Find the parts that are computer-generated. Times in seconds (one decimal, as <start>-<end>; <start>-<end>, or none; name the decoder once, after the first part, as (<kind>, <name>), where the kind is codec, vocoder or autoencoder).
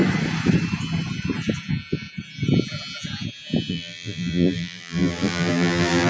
3.7-6.1 (vocoder, BigVGAN v2)